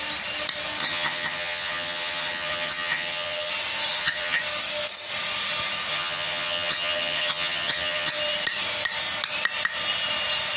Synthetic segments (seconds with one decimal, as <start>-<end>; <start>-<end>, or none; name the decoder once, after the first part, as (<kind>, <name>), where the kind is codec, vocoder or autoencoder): 0.8-3.5 (vocoder, HiFi-GAN); 3.9-4.4; 5.9-8.1